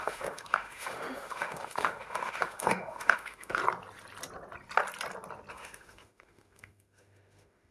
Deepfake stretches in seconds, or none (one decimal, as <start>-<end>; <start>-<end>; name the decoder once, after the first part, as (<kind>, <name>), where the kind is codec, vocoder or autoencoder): 0.0-3.6 (autoencoder, DAC-VAE); 5.5-7.7